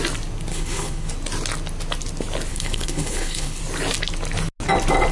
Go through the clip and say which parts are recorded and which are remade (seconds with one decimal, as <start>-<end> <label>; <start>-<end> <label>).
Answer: 0.0-0.5 recorded; 0.5-1.1 remade; 1.1-2.5 recorded; 2.5-3.6 remade; 3.6-5.1 recorded